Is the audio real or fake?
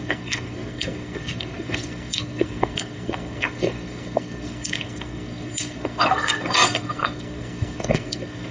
fake